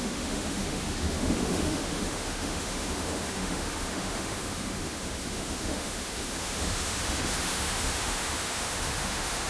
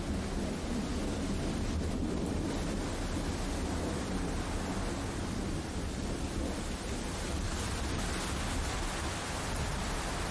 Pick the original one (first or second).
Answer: second